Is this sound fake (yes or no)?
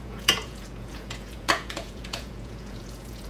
yes